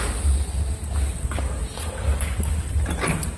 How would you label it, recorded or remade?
recorded